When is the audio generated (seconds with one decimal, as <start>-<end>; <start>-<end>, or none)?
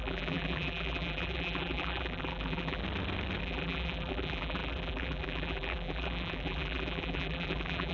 0.0-2.8; 3.4-7.9